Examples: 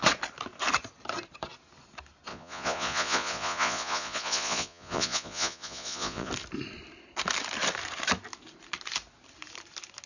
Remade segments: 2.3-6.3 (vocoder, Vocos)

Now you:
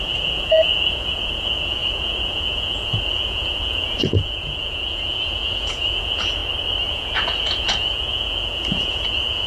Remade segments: 0.0-6.4 (vocoder, Vocos); 6.9-9.5

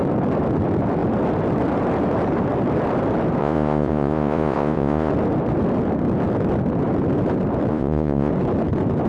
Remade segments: 3.4-5.1 (vocoder, Vocos); 7.7-8.3

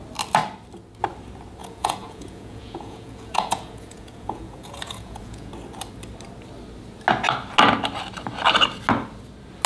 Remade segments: 1.6-5.5 (vocoder, Vocos)

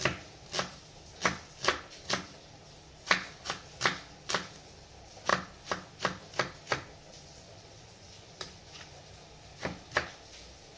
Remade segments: 7.1-9.0 (vocoder, Vocos)